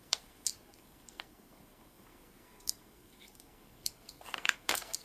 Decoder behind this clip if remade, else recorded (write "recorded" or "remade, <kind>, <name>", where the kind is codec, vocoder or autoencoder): remade, codec, SNAC